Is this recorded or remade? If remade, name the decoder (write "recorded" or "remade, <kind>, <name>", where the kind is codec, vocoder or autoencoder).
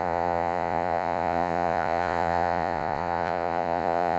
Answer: remade, vocoder, Vocos